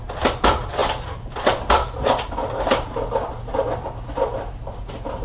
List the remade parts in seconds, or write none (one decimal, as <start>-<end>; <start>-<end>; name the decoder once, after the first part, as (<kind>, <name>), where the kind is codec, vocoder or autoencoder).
none